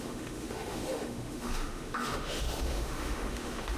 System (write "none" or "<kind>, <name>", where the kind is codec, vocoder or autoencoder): autoencoder, DAC-VAE